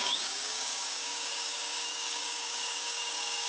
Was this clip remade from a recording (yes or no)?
yes